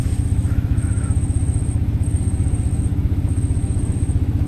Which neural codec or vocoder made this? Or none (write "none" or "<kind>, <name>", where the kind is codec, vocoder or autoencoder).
autoencoder, DAC-VAE